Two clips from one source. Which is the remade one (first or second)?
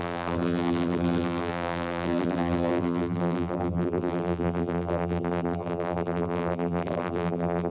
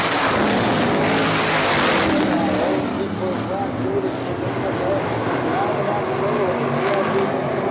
first